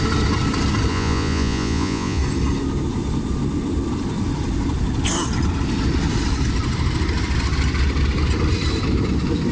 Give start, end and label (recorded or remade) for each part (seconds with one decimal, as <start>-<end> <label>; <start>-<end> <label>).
0.0-0.9 recorded; 0.9-2.2 remade; 2.2-9.5 recorded

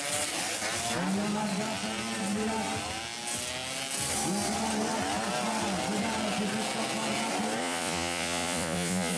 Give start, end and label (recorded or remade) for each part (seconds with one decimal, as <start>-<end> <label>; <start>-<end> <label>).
0.0-7.6 recorded; 7.6-9.2 remade

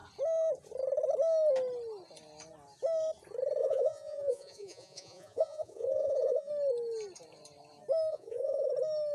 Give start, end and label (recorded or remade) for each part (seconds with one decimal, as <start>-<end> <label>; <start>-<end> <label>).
0.0-3.6 recorded; 3.6-6.5 remade; 6.5-8.1 recorded; 8.1-8.7 remade; 8.7-9.1 recorded

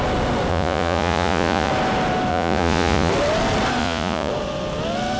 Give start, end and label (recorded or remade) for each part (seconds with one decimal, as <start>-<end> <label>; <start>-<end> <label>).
0.0-0.5 recorded; 0.5-1.7 remade; 1.7-2.3 recorded; 2.3-3.1 remade; 3.1-3.8 recorded; 3.8-4.3 remade; 4.3-5.2 recorded

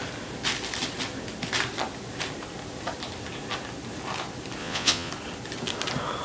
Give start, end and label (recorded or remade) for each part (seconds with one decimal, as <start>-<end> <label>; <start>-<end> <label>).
0.0-4.6 recorded; 4.6-5.1 remade; 5.1-6.2 recorded

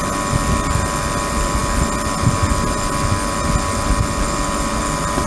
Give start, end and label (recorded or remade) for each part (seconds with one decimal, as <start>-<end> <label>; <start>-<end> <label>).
0.0-5.3 recorded

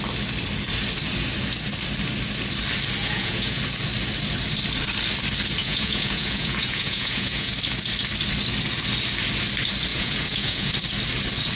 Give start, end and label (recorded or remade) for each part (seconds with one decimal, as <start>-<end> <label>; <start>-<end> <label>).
0.0-3.0 recorded; 3.0-3.6 remade; 3.6-5.6 recorded; 5.6-7.5 remade; 7.5-9.9 recorded; 9.9-10.7 remade; 10.7-11.6 recorded